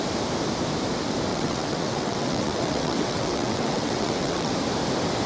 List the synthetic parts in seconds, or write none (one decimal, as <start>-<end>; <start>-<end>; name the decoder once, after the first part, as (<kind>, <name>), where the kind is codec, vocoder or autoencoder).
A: 1.3-4.5 (vocoder, WaveNeXt)